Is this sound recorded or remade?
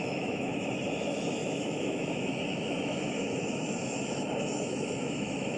remade